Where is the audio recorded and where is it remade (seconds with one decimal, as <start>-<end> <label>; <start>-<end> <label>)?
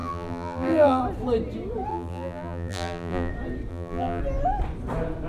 0.0-1.0 remade; 1.0-1.9 recorded; 1.9-3.3 remade; 3.3-3.7 recorded; 3.7-4.2 remade; 4.2-5.3 recorded